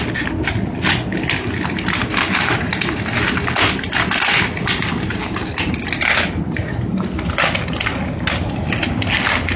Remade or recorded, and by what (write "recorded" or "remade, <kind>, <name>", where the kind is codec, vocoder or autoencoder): recorded